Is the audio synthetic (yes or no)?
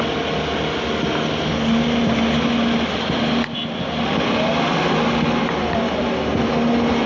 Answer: no